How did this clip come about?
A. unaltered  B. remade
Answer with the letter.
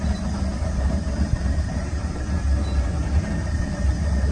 B